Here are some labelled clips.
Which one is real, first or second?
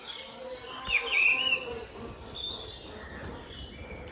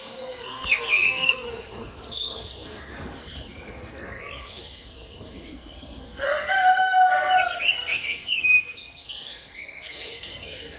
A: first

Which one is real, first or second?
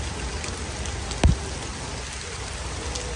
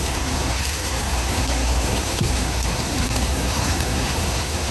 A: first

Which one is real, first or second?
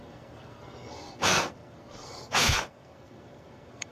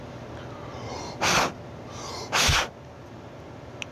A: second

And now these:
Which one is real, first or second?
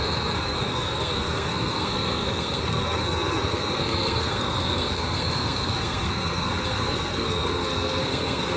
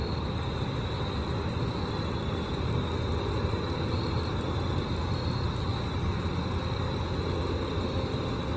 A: second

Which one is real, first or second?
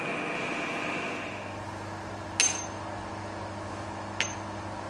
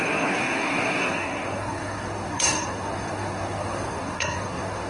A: first